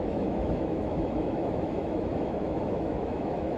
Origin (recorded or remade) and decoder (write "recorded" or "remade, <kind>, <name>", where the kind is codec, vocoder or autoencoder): remade, autoencoder, DAC-VAE